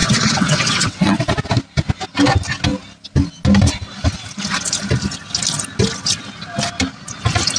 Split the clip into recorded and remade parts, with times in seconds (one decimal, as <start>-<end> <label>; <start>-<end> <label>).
0.0-1.3 remade; 1.3-7.6 recorded